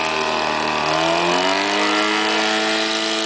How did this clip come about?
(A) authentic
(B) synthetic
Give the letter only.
A